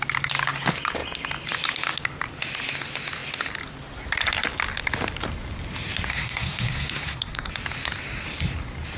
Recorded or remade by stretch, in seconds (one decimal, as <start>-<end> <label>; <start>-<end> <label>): 0.0-6.1 recorded; 6.1-7.5 remade; 7.5-9.0 recorded